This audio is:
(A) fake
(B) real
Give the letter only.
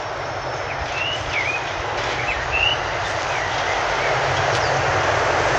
B